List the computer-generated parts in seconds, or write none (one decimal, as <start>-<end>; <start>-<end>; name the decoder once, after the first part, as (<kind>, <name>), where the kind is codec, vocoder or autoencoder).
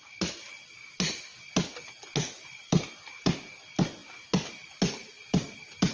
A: none